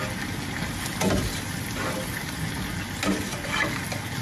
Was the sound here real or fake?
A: real